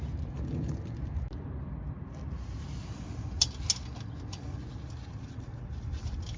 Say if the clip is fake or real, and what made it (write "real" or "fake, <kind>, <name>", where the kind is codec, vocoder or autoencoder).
real